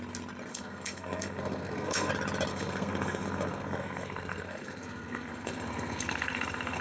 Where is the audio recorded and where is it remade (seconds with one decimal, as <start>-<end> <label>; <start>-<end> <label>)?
0.0-0.5 recorded; 0.5-2.1 remade; 2.1-2.5 recorded; 2.5-6.8 remade